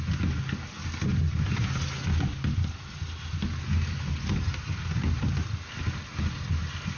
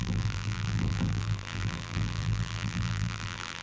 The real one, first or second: first